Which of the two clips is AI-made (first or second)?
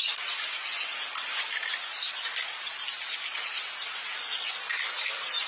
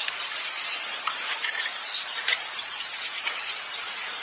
second